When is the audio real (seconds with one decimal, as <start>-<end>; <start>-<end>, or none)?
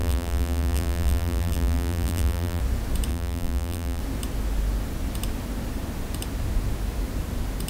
2.6-3.1; 4.0-7.7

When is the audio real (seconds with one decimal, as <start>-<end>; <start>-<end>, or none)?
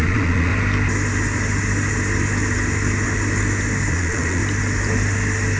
0.5-3.9; 4.4-5.6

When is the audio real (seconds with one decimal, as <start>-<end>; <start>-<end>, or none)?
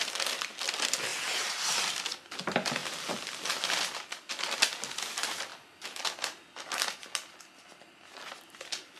0.0-9.0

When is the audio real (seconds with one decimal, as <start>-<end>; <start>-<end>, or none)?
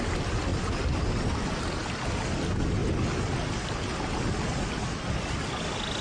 0.0-6.0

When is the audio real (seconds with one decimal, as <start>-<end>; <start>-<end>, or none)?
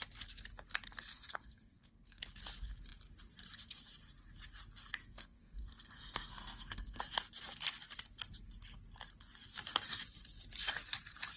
0.0-1.1; 2.2-5.0; 7.0-11.4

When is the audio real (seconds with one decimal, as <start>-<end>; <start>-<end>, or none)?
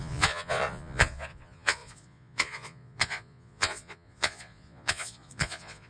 none